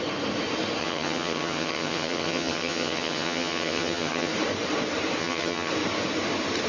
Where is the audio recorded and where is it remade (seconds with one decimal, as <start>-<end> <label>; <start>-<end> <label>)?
0.0-0.8 recorded; 0.8-4.3 remade; 4.3-5.2 recorded; 5.2-5.7 remade; 5.7-6.7 recorded